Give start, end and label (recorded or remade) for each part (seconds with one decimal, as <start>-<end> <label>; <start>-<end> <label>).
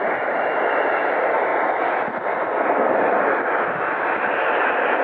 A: 0.0-5.0 recorded